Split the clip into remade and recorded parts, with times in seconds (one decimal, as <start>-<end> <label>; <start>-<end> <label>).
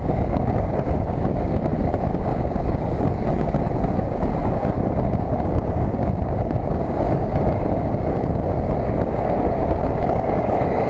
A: 0.0-10.9 remade